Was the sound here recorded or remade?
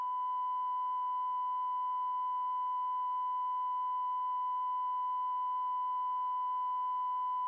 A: recorded